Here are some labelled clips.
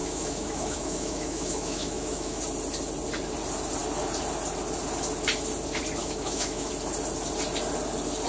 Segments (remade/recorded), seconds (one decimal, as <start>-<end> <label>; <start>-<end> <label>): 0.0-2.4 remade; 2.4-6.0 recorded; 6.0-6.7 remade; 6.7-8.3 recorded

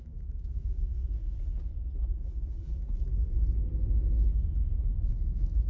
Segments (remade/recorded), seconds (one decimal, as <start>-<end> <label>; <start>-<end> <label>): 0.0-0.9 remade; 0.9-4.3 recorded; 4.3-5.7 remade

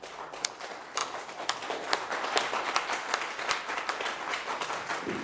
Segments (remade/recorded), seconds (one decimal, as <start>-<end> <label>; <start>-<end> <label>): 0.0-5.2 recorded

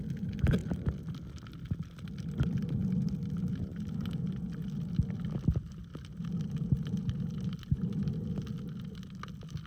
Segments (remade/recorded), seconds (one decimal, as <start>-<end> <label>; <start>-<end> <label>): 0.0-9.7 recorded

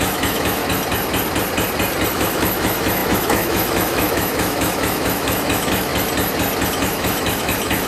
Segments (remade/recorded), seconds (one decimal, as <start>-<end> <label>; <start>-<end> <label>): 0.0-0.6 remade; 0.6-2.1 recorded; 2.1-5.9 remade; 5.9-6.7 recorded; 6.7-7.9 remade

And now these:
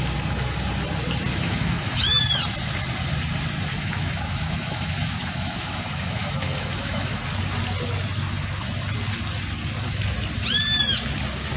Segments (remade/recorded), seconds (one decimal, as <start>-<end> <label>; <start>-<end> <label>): 0.0-1.3 recorded; 1.3-2.2 remade; 2.2-3.7 recorded; 3.7-7.2 remade; 7.2-11.6 recorded

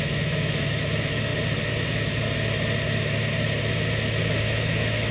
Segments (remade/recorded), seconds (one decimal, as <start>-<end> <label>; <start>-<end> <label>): 0.0-1.3 remade; 1.3-4.4 recorded; 4.4-5.1 remade

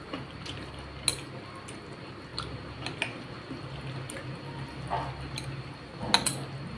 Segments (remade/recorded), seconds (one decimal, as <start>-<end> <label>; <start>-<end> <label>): 0.0-6.8 recorded